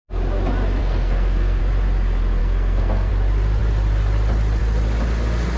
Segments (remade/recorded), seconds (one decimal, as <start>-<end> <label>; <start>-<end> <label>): 0.0-0.8 recorded; 0.8-1.6 remade; 1.6-2.4 recorded; 2.4-3.1 remade; 3.1-5.6 recorded